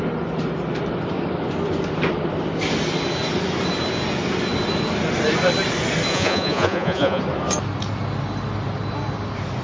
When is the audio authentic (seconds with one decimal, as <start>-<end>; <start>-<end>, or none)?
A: 0.0-6.1; 7.2-9.6